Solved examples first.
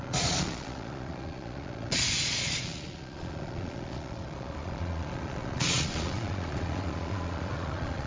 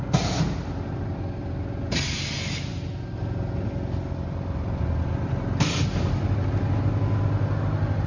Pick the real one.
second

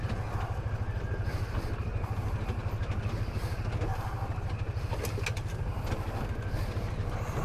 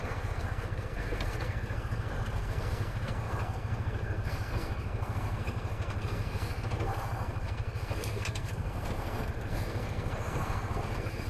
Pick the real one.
first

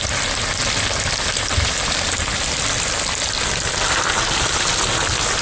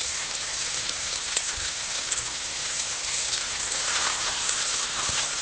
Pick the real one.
first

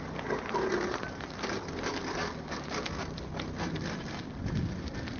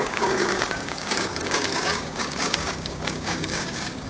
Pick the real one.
first